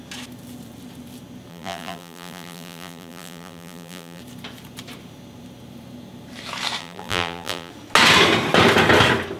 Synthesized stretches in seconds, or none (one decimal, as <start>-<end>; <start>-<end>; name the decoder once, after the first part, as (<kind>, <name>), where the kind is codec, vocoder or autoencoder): 1.5-4.2 (vocoder, BigVGAN v2); 6.8-7.7